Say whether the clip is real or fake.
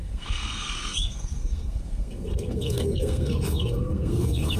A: fake